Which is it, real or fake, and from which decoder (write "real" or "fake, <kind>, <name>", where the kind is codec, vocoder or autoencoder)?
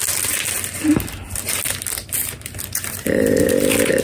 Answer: real